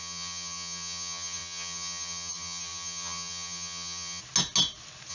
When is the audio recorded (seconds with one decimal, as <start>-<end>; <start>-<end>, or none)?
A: 4.2-5.1